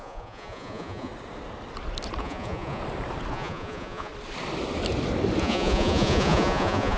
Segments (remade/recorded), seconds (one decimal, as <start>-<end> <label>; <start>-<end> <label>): 0.0-1.1 remade; 1.1-2.2 recorded; 2.2-2.8 remade; 2.8-3.3 recorded; 3.3-4.1 remade; 4.1-5.4 recorded; 5.4-7.0 remade